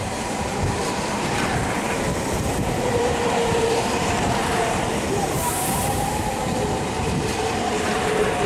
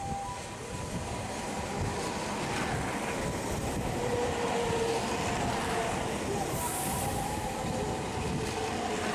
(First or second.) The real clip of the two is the second